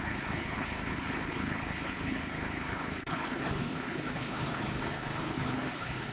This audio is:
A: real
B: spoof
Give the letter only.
B